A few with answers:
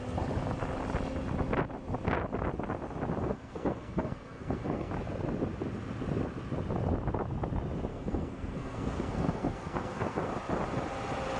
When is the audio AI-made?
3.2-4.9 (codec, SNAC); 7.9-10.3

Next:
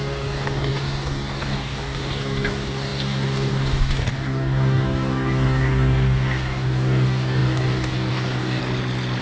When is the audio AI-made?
0.0-8.6 (codec, DAC)

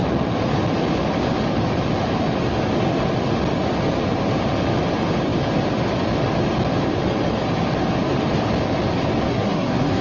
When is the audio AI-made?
9.3-10.0 (codec, SNAC)

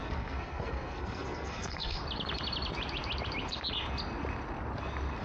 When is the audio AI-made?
0.0-2.0 (codec, SNAC)

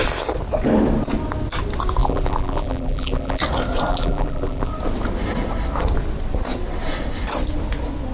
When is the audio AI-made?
2.0-3.4 (vocoder, BigVGAN v2); 3.9-4.7

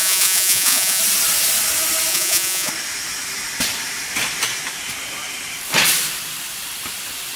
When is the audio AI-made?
0.0-1.0 (vocoder, Vocos); 2.1-2.7

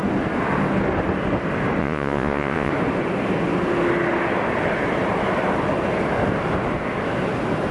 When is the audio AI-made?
1.8-2.7 (vocoder, Vocos)

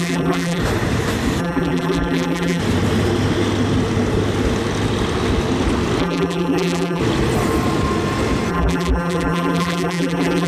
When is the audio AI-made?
0.0-0.6 (vocoder, BigVGAN v2); 1.4-2.6; 6.0-7.0; 8.5-10.5